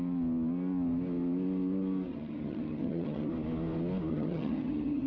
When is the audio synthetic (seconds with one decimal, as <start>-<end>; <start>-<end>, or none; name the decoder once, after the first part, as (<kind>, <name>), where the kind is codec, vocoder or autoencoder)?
2.1-3.3 (vocoder, HiFi-GAN); 4.1-5.1

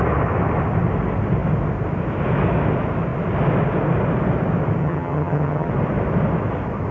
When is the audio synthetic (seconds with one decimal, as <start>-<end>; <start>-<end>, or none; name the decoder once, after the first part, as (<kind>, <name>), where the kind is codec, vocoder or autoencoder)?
4.8-5.7 (vocoder, HiFi-GAN)

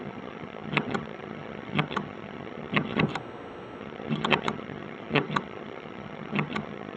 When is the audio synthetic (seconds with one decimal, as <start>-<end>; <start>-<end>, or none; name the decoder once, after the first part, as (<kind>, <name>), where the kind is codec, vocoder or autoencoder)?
0.0-3.0 (vocoder, HiFi-GAN); 3.8-7.0

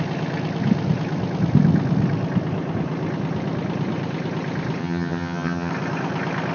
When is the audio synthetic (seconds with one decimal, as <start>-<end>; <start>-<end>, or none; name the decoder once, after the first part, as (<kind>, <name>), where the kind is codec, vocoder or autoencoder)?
4.8-5.7 (vocoder, HiFi-GAN)

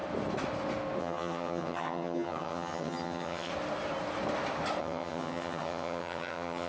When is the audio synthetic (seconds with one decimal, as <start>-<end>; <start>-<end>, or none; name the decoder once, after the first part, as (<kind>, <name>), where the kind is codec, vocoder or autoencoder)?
1.0-3.5 (vocoder, HiFi-GAN); 4.8-6.7